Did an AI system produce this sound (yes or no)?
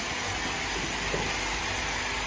no